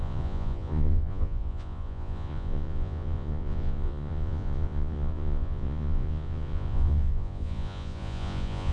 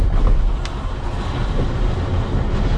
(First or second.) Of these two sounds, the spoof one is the first